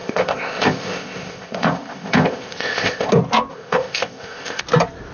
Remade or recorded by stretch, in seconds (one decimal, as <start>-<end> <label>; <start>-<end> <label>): 0.0-3.1 remade; 3.1-3.5 recorded; 3.5-4.6 remade; 4.6-5.1 recorded

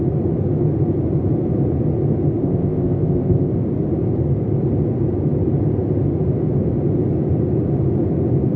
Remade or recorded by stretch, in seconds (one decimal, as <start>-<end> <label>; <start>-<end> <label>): 0.0-2.4 recorded; 2.4-3.5 remade; 3.5-8.6 recorded

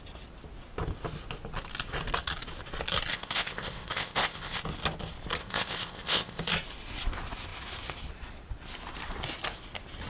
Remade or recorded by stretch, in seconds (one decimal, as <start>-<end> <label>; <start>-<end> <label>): 0.0-3.1 recorded; 3.1-4.6 remade; 4.6-5.4 recorded; 5.4-6.4 remade; 6.4-10.1 recorded

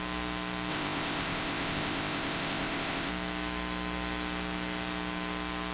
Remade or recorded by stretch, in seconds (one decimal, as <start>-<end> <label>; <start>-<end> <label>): 0.0-0.7 recorded; 0.7-3.1 remade; 3.1-5.7 recorded

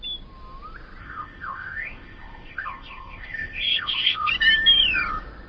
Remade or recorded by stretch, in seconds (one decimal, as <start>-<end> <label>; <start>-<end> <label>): 0.0-1.0 recorded; 1.0-4.3 remade; 4.3-5.5 recorded